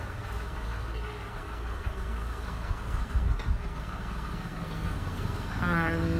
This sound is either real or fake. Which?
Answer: fake